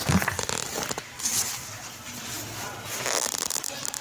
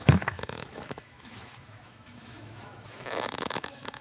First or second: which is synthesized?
second